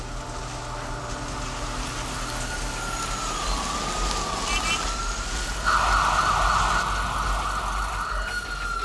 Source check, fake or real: real